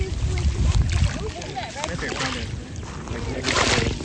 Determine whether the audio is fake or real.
real